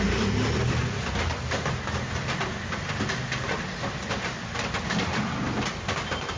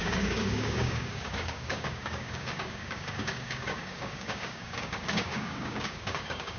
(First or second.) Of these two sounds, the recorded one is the first